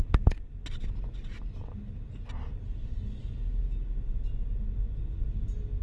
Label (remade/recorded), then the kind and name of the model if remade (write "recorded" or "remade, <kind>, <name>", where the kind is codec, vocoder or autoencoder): recorded